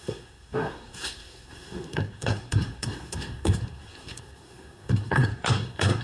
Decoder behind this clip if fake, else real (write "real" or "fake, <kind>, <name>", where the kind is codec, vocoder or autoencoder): fake, codec, SNAC